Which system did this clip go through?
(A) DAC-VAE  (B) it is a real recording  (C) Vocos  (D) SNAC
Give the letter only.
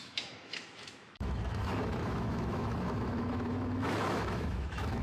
A